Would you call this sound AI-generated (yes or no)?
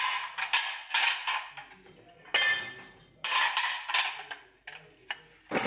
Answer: no